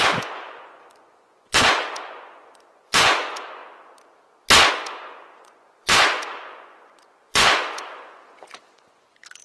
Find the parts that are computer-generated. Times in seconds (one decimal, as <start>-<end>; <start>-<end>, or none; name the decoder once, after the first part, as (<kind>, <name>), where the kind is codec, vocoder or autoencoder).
0.0-3.6 (vocoder, Vocos); 4.7-9.4